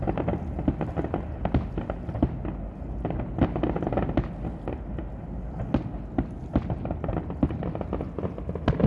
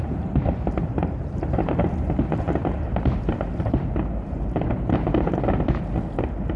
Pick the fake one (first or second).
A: second